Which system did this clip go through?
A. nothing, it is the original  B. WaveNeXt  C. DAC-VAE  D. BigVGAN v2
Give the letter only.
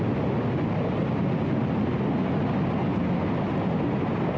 A